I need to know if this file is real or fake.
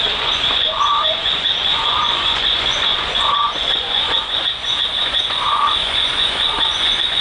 fake